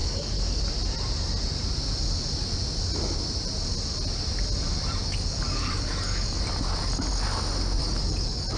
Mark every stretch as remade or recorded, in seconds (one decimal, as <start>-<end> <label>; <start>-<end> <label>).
0.0-0.6 remade; 0.6-5.0 recorded; 5.0-6.4 remade; 6.4-7.8 recorded; 7.8-8.6 remade